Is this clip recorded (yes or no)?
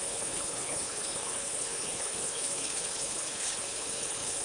no